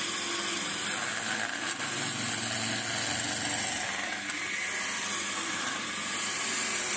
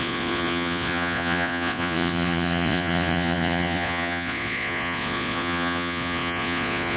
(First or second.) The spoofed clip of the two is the second